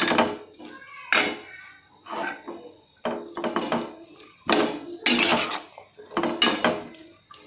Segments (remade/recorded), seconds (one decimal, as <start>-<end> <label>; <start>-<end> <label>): 0.0-7.5 recorded